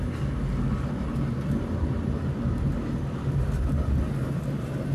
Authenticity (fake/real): real